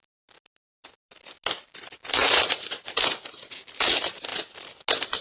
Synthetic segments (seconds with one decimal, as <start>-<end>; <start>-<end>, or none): 2.2-3.0